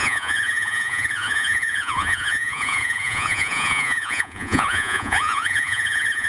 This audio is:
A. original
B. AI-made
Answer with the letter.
B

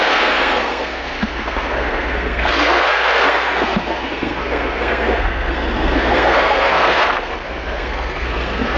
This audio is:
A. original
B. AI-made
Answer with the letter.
B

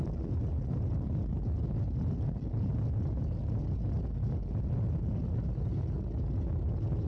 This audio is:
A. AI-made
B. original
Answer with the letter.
B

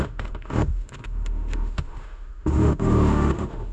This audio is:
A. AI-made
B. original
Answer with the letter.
A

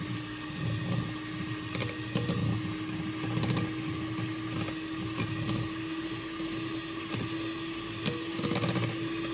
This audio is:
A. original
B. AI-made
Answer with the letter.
A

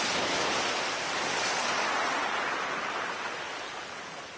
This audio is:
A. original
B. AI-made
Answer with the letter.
A